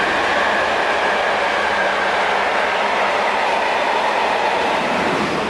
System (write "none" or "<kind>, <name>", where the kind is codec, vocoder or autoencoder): none